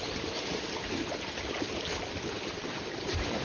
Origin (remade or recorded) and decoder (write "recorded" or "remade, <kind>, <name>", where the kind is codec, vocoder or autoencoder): recorded